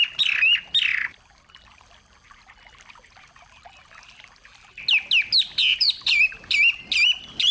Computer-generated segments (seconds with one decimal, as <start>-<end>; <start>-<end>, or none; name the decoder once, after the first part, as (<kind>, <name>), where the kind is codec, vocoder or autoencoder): 0.9-1.6 (vocoder, BigVGAN v2); 5.7-6.8